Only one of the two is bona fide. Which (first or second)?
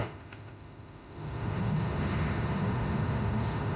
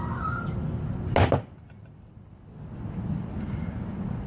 second